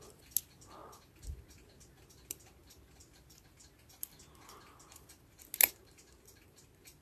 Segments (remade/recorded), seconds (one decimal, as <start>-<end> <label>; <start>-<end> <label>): 0.0-7.0 recorded